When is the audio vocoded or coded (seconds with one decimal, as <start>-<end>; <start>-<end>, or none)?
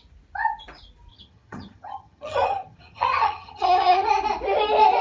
1.1-4.1